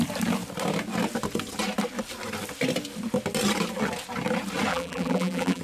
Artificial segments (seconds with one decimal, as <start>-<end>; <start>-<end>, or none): 4.7-5.6